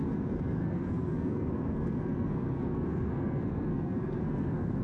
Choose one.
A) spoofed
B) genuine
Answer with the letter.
A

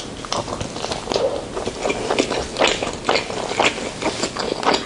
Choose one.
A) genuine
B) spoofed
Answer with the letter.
A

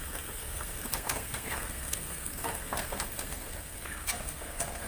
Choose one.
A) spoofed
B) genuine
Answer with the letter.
A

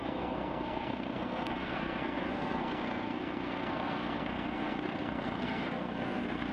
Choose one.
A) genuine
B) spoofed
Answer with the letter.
B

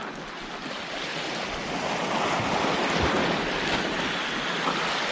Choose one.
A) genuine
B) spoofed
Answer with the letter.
A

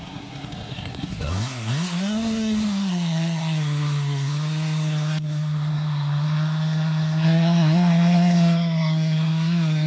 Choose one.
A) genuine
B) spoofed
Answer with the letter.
B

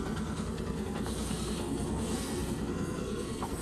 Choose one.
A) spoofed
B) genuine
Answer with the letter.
A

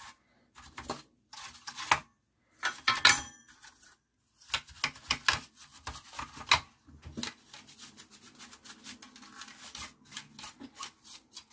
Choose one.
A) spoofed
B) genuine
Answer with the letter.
B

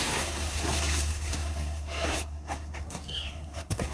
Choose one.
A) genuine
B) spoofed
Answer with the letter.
B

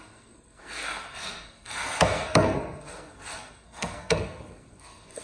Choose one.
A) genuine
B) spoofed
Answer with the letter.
B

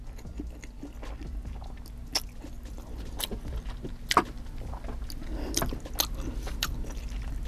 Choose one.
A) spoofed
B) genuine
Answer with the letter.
B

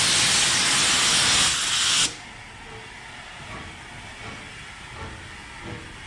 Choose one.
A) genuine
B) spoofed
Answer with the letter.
A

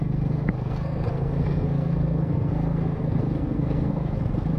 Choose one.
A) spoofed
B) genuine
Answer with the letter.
A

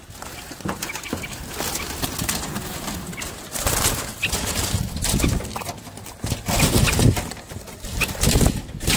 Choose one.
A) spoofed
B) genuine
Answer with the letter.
B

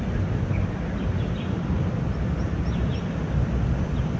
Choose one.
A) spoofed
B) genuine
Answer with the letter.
B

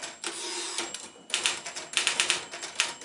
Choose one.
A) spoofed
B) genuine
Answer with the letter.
B